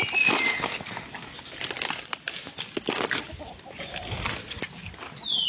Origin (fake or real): real